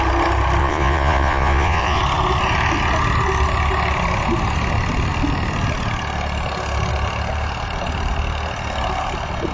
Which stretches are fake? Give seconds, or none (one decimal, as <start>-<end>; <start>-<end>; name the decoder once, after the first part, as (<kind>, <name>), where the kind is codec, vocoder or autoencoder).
0.6-2.0 (vocoder, Vocos)

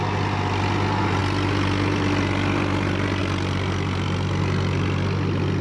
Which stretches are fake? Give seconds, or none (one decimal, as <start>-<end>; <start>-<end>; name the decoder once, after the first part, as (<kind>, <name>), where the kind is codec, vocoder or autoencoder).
none

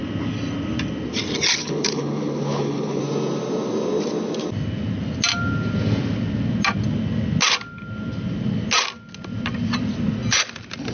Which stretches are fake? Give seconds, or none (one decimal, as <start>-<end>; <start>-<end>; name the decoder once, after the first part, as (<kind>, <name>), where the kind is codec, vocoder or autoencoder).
1.6-3.0 (codec, HILCodec)